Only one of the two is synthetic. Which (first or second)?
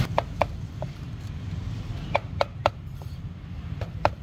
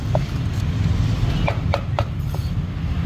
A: first